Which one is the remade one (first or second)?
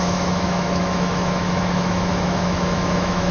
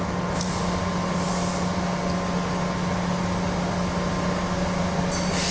first